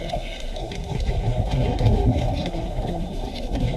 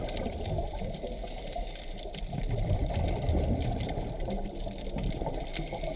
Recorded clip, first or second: second